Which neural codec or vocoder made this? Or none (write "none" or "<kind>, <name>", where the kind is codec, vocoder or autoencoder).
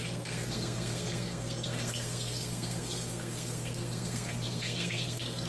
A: codec, SNAC